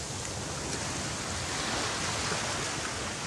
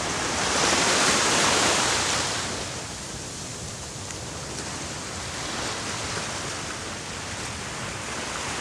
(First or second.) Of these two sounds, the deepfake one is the second